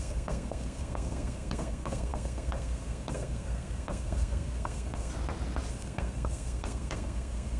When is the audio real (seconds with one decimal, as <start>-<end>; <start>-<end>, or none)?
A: 5.1-5.7